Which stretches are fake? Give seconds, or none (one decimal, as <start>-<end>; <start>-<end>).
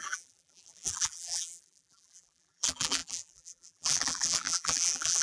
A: 0.0-5.2